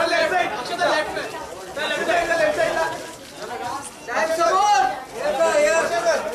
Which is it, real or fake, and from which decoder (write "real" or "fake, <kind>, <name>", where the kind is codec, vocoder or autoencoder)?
real